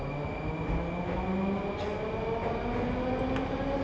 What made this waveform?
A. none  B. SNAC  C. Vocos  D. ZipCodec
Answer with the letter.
A